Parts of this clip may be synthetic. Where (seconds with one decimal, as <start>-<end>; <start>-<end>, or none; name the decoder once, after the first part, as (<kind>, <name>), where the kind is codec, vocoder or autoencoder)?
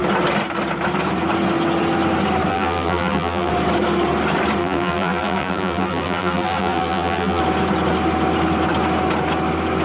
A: 2.5-3.5 (vocoder, BigVGAN v2); 4.6-7.4